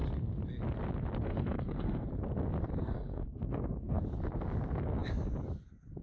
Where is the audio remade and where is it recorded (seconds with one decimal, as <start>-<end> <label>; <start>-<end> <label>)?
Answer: 0.0-1.3 recorded; 1.3-2.1 remade; 2.1-2.8 recorded; 2.8-4.0 remade; 4.0-6.0 recorded